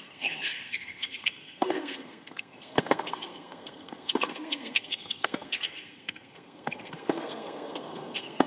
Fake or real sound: fake